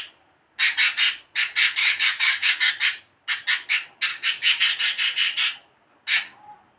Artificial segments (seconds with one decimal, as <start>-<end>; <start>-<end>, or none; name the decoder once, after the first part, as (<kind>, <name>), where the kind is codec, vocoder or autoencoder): 1.8-2.7 (codec, DAC); 4.1-4.6